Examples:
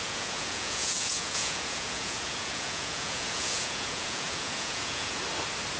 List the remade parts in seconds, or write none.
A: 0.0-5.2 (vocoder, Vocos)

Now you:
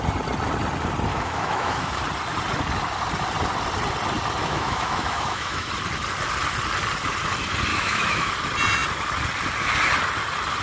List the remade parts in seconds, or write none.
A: 1.1-2.0 (autoencoder, DAC-VAE); 4.4-5.7; 7.7-8.3

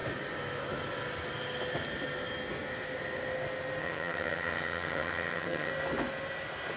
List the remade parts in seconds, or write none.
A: 3.8-5.7 (vocoder, HiFi-GAN)

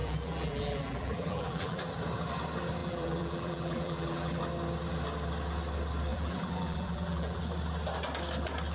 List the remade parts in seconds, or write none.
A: 0.0-1.8 (vocoder, BigVGAN v2); 2.8-4.4; 6.1-7.4